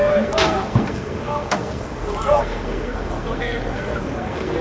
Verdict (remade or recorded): remade